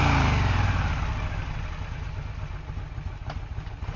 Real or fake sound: real